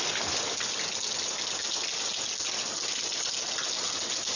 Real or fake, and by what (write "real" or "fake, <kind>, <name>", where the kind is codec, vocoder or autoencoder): real